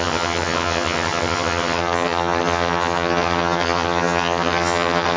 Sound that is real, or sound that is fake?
fake